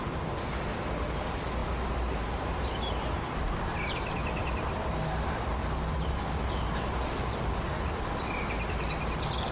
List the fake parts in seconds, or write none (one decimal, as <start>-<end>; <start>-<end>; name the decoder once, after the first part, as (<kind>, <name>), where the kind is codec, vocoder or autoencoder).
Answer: 1.6-2.9 (vocoder, BigVGAN v2); 5.6-7.6

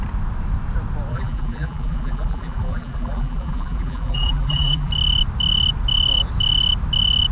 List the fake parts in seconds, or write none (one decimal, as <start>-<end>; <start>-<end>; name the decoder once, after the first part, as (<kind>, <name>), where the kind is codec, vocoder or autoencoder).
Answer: 1.1-4.9 (vocoder, BigVGAN v2)

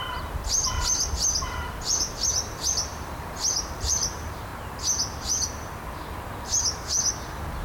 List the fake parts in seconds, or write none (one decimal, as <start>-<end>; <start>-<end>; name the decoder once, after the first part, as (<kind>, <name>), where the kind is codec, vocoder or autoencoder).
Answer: 0.0-4.5 (vocoder, BigVGAN v2); 6.4-7.6

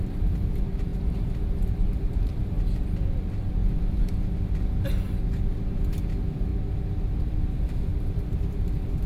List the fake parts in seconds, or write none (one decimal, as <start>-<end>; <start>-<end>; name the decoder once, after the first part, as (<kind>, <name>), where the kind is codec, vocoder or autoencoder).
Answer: 0.0-3.6 (vocoder, BigVGAN v2); 5.2-6.5; 7.1-9.1

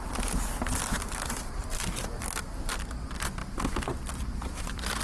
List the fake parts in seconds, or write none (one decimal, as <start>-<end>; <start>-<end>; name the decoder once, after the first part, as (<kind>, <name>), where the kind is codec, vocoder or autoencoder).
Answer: 1.7-2.2 (vocoder, BigVGAN v2); 3.4-5.0

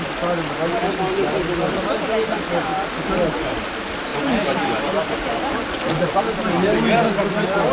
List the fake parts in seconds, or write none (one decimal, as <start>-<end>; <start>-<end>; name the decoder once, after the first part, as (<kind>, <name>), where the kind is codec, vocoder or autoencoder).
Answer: 4.1-6.2 (vocoder, BigVGAN v2)